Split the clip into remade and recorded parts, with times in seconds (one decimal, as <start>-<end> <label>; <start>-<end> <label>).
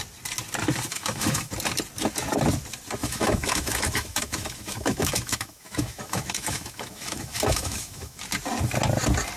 0.0-0.9 recorded; 0.9-1.5 remade; 1.5-3.0 recorded; 3.0-8.2 remade; 8.2-9.4 recorded